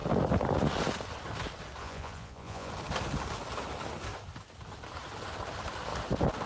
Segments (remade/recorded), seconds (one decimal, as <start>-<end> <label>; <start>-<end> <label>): 0.0-1.8 recorded; 1.8-2.7 remade; 2.7-6.5 recorded